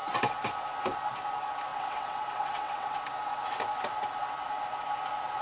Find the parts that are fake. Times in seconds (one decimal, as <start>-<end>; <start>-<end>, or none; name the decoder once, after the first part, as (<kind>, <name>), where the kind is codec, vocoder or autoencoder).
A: 1.7-3.0 (vocoder, WaveNeXt)